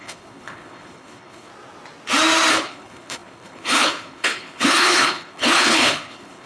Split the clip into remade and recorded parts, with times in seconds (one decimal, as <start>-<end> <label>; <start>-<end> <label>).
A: 0.0-1.5 remade; 1.5-2.5 recorded; 2.5-6.5 remade